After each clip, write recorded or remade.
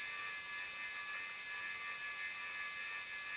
recorded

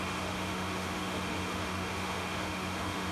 remade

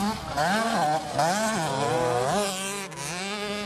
recorded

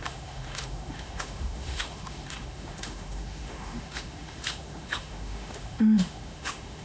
remade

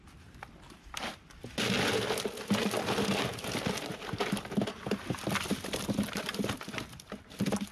recorded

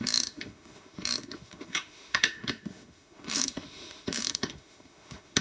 remade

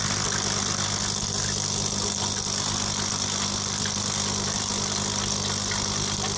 recorded